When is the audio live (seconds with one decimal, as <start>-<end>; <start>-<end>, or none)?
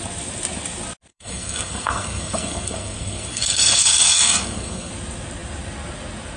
0.0-1.1; 4.9-6.4